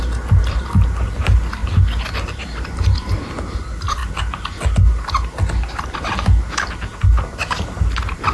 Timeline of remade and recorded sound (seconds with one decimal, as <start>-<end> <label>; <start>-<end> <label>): 0.0-8.3 recorded